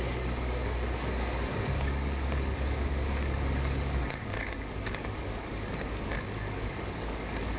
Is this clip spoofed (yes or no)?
yes